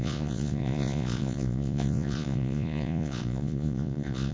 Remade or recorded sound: remade